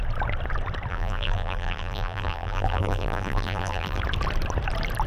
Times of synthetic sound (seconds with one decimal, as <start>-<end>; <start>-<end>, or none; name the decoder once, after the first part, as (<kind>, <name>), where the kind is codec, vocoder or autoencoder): 0.9-4.0 (vocoder, BigVGAN v2)